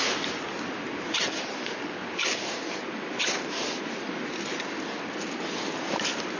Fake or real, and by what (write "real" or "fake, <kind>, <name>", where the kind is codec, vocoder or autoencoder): real